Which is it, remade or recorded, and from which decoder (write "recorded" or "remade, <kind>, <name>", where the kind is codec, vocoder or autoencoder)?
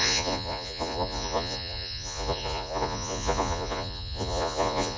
remade, vocoder, Vocos